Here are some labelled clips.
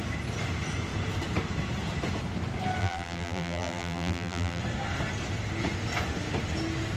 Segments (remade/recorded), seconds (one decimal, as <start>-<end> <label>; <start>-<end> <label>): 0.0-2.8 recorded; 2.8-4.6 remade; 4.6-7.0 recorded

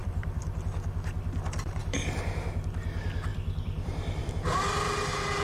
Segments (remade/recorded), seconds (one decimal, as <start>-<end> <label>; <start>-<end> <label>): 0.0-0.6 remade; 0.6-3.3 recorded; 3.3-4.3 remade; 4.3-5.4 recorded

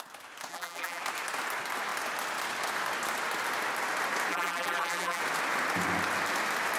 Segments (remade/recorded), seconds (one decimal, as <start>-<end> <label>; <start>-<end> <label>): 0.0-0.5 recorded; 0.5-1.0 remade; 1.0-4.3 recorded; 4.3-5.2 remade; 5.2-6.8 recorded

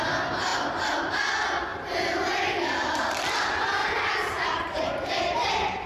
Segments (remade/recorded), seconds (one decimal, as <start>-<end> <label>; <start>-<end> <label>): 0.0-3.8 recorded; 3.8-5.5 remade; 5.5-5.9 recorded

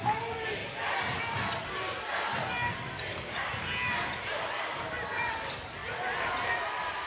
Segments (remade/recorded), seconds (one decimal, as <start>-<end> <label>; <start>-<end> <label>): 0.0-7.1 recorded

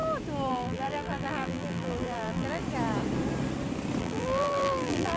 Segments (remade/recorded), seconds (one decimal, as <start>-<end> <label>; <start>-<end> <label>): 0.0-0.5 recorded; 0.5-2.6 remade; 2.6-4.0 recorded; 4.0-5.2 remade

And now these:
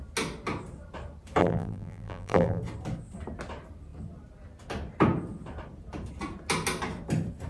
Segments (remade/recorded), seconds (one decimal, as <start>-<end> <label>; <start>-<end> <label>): 0.0-1.4 recorded; 1.4-2.6 remade; 2.6-7.5 recorded